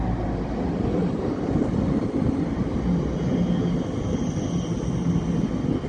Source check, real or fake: real